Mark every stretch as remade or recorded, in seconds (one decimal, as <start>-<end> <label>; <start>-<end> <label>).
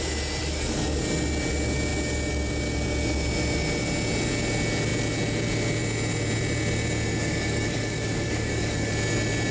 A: 0.0-0.4 recorded; 0.4-1.0 remade; 1.0-7.2 recorded; 7.2-8.9 remade; 8.9-9.5 recorded